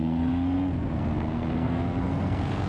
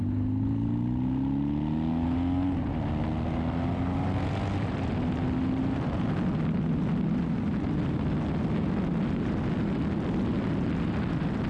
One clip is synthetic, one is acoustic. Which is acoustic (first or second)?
second